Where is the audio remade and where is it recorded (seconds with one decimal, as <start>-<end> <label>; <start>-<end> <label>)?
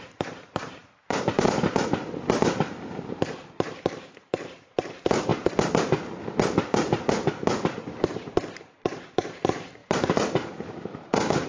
0.0-5.3 remade; 5.3-7.3 recorded; 7.3-11.5 remade